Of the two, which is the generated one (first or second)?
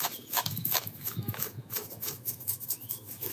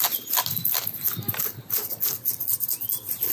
first